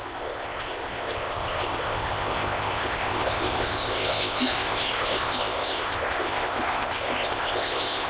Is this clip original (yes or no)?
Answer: no